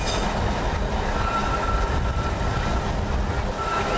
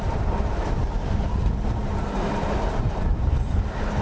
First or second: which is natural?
first